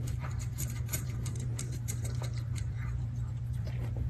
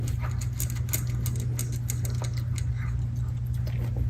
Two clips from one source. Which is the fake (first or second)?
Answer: first